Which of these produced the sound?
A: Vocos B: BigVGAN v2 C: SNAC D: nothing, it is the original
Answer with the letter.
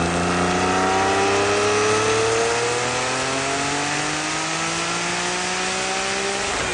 D